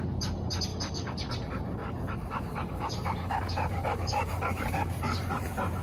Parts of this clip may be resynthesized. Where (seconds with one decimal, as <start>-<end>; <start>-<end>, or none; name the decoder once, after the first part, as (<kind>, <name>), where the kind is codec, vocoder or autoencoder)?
0.7-1.3 (codec, DAC); 1.8-5.3